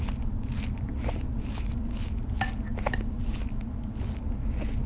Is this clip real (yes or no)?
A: yes